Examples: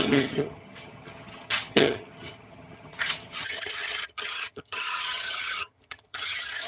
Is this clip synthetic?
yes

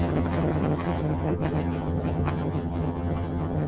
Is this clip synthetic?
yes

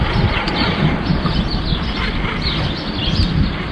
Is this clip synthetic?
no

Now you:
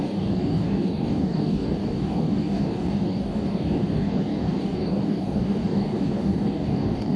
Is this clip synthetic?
yes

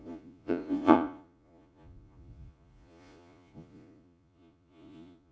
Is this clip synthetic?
yes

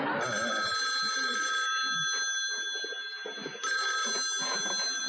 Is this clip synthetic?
no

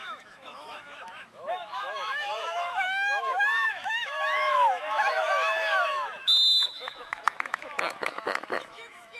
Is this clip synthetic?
yes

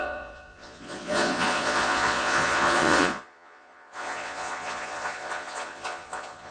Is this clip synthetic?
yes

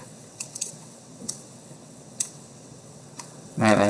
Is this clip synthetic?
yes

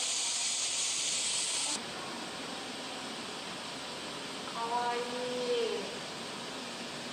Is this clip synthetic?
no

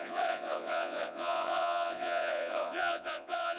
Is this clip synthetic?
yes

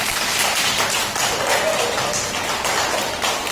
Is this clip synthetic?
no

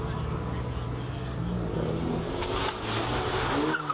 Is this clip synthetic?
no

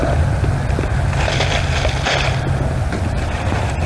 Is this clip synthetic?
no